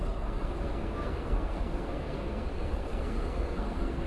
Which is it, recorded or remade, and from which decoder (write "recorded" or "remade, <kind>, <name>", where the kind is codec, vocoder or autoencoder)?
remade, codec, SNAC